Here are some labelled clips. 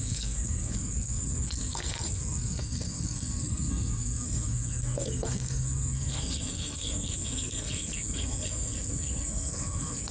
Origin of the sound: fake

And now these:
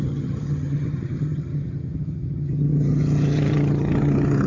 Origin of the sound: fake